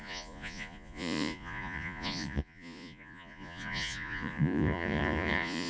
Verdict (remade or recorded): remade